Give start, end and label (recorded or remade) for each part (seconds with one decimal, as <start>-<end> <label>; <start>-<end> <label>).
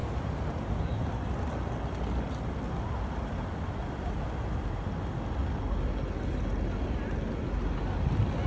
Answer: 0.0-8.5 recorded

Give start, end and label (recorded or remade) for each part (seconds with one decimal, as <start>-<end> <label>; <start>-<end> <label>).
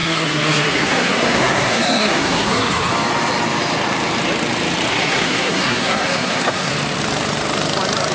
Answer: 0.0-2.9 remade; 2.9-4.9 recorded; 4.9-6.7 remade; 6.7-8.1 recorded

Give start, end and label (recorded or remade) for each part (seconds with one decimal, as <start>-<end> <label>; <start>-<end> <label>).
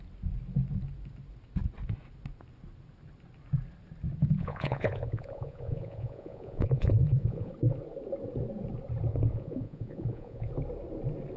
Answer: 0.0-4.2 recorded; 4.2-7.5 remade; 7.5-9.1 recorded; 9.1-10.5 remade; 10.5-11.4 recorded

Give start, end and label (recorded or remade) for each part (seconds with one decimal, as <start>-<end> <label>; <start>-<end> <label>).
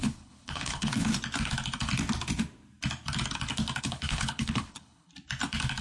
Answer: 0.0-1.1 remade; 1.1-3.8 recorded; 3.8-5.1 remade; 5.1-5.8 recorded